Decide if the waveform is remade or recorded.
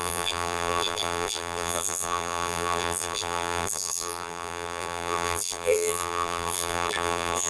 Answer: remade